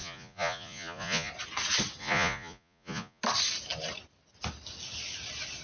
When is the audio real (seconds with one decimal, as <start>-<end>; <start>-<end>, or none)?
1.3-2.0; 3.2-5.6